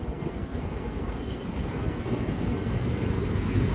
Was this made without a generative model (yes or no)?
no